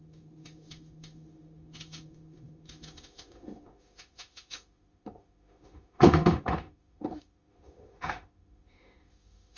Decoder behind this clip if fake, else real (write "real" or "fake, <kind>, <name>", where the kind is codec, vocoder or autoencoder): fake, autoencoder, DAC-VAE